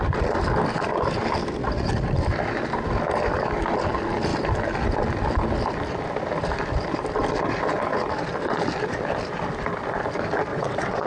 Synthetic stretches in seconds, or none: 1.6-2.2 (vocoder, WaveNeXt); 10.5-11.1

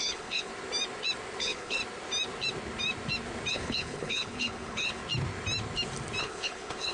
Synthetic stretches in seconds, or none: 0.0-0.5 (codec, HILCodec); 1.4-1.8; 3.5-5.0; 6.2-6.9

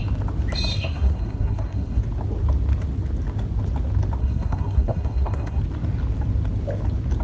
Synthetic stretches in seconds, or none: 0.7-2.0 (codec, SNAC); 4.2-5.6

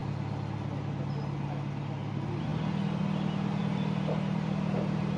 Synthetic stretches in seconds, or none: 3.6-5.2 (vocoder, BigVGAN v2)